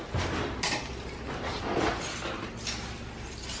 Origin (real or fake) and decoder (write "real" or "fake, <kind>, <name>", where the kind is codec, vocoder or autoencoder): real